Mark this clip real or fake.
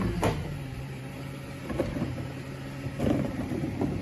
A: fake